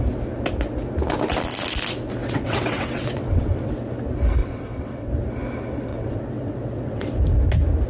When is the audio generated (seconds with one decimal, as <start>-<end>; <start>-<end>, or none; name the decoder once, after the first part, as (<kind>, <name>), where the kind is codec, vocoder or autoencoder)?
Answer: 2.2-3.7 (vocoder, WaveNeXt); 4.4-5.1; 5.9-7.2